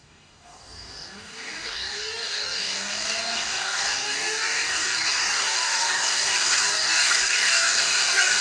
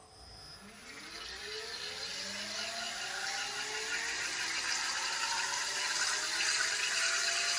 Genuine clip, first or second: second